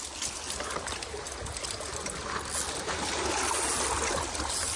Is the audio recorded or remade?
recorded